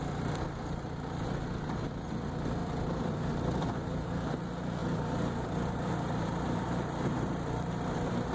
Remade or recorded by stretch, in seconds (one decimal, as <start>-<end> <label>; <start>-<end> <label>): 0.0-2.6 recorded; 2.6-3.7 remade; 3.7-4.8 recorded; 4.8-7.7 remade; 7.7-8.3 recorded